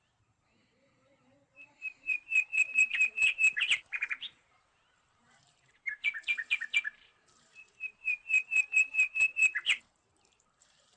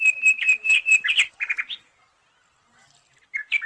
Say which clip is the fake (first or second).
first